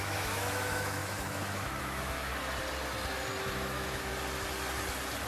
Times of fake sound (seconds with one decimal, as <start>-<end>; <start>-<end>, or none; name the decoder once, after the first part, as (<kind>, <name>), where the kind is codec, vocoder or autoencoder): 0.0-2.3 (autoencoder, DAC-VAE); 3.4-4.1